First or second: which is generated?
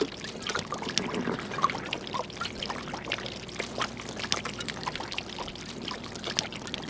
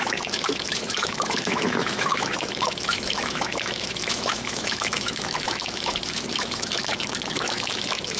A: second